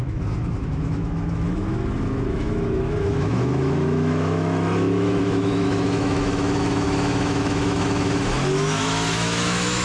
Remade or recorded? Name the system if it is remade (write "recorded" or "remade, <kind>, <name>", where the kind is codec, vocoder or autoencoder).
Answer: remade, autoencoder, DAC-VAE